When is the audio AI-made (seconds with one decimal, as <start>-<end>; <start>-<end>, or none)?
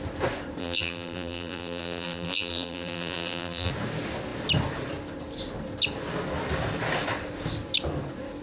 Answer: 0.6-3.7